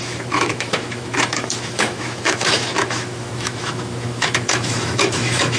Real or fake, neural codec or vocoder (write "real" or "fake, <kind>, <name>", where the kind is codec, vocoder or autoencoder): fake, autoencoder, DAC-VAE